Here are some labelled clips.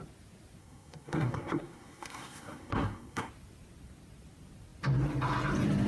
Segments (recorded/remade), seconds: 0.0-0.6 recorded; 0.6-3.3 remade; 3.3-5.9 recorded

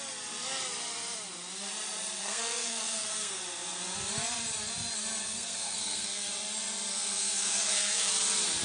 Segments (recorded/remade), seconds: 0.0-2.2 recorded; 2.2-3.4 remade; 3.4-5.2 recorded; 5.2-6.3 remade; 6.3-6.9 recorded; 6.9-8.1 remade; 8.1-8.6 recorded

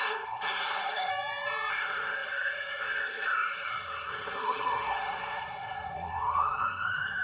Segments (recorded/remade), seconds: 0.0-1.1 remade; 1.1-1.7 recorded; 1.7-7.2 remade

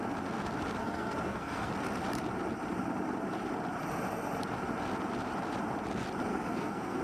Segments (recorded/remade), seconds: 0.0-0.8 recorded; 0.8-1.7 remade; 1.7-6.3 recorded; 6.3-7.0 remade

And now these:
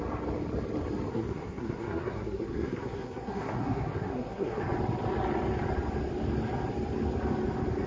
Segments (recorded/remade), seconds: 0.0-1.1 recorded; 1.1-4.6 remade; 4.6-7.9 recorded